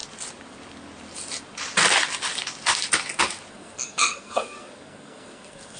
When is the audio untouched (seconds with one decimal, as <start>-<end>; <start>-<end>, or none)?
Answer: 0.0-3.5